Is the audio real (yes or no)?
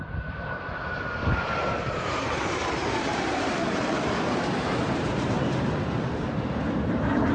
no